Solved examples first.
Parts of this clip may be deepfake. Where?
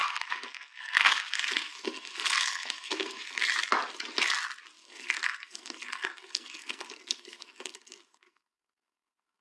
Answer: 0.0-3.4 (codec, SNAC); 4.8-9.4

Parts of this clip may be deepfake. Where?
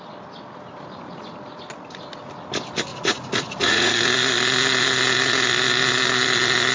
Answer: 2.9-3.9 (vocoder, Vocos)